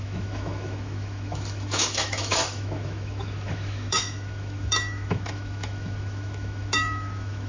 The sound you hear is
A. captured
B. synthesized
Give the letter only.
B